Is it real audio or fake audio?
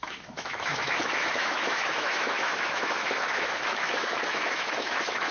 fake